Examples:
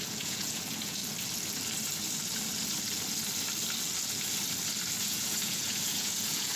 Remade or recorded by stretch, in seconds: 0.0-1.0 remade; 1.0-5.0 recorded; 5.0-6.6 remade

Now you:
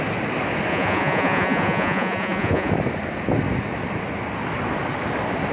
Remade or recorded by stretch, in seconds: 0.0-0.7 recorded; 0.7-2.7 remade; 2.7-5.5 recorded

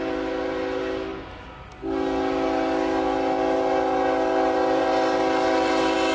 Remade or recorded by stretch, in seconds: 0.0-6.1 recorded